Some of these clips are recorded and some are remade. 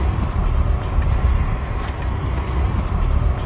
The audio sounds recorded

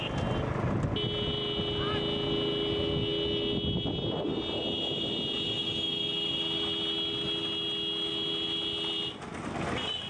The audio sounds recorded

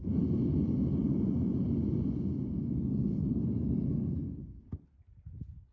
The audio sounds recorded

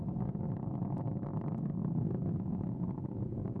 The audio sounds recorded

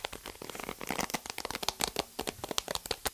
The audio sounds recorded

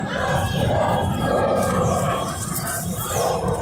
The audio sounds remade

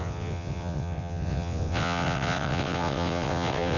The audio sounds remade